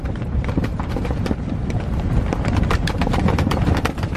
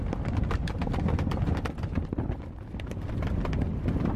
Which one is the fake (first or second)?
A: first